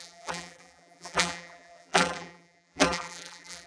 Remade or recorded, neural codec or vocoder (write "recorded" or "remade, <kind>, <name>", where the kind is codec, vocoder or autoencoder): remade, vocoder, BigVGAN v2